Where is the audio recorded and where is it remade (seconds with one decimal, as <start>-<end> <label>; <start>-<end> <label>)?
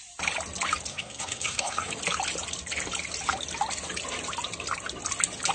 0.0-0.9 recorded; 0.9-1.9 remade; 1.9-5.5 recorded